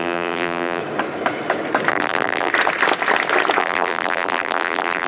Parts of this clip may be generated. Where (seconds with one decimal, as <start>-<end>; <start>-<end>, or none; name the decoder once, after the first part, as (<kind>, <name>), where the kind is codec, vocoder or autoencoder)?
0.0-0.8 (vocoder, BigVGAN v2); 1.9-2.5; 3.6-5.1